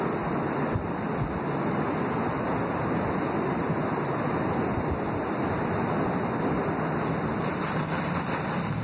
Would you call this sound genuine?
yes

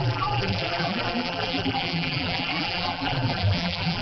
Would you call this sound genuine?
no